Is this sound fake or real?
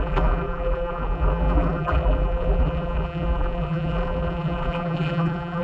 fake